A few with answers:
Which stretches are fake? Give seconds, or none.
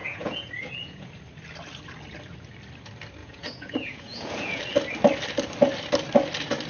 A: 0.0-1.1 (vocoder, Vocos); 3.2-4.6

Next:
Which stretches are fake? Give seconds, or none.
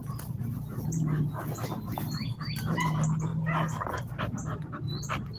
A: none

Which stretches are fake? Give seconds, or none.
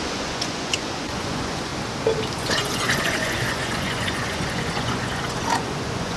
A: 0.0-1.7 (vocoder, Vocos); 2.4-6.2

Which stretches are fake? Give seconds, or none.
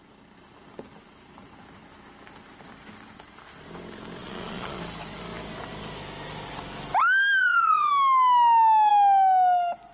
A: 4.2-4.8 (vocoder, Vocos); 7.4-7.9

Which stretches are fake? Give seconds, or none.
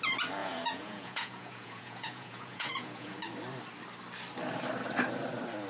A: 0.4-3.2 (vocoder, Vocos)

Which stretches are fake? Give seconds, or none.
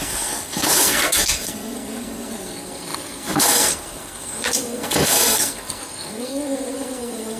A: 0.0-7.4 (codec, SNAC)